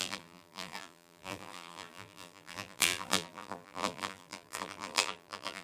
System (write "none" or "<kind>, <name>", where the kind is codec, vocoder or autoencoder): vocoder, BigVGAN v2